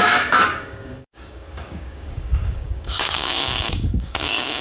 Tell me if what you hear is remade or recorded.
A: remade